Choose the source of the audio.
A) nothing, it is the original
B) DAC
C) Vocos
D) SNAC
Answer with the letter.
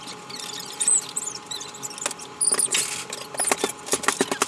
A